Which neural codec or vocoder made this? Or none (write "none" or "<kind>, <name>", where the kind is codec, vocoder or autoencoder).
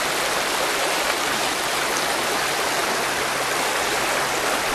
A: none